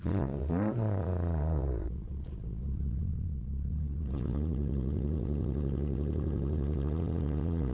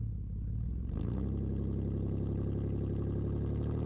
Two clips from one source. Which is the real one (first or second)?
second